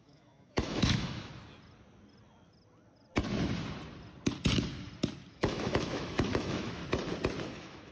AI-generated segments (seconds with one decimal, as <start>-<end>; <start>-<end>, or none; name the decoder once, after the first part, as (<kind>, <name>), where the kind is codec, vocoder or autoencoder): 0.0-1.3 (autoencoder, DAC-VAE); 5.3-6.8; 7.4-7.9